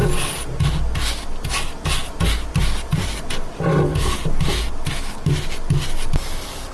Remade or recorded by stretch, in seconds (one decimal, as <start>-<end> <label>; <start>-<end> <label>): 0.0-6.7 recorded